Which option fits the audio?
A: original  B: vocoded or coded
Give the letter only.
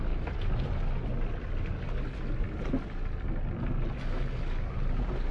A